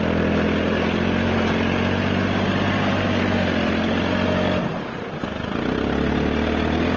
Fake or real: real